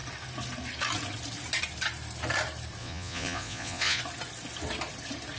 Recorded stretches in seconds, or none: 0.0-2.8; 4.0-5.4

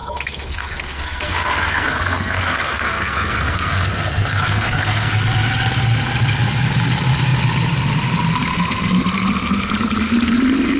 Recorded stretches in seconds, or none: 5.1-10.8

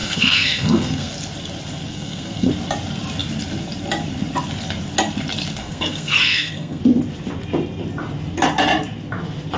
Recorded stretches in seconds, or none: 1.1-1.9; 2.5-5.6; 6.8-9.6

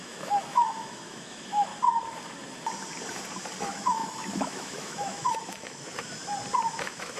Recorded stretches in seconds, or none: 1.7-3.6; 6.2-6.8

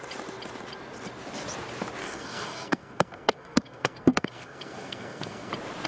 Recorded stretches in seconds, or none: 0.0-2.0; 5.5-5.9